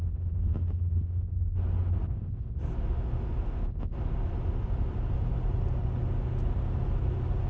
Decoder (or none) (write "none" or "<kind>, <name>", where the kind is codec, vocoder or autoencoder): none